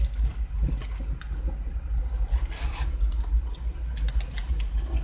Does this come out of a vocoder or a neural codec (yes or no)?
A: no